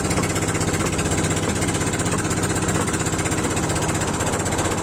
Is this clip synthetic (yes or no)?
no